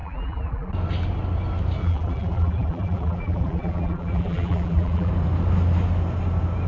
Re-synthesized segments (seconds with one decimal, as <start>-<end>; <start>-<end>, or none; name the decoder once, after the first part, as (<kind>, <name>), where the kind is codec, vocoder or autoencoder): 0.0-0.7 (vocoder, BigVGAN v2); 1.8-5.1